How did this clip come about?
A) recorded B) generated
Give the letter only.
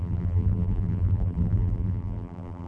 B